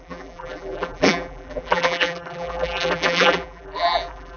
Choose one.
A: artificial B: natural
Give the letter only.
A